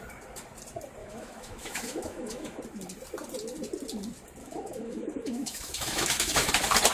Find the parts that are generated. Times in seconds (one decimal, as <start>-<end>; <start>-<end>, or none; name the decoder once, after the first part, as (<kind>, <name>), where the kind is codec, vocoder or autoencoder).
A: 1.0-2.6 (autoencoder, DAC-VAE); 4.4-6.5